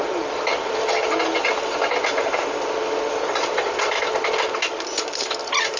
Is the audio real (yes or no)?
yes